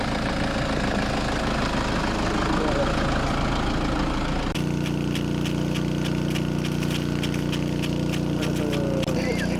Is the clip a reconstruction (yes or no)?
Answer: no